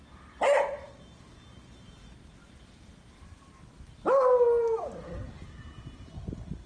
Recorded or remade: recorded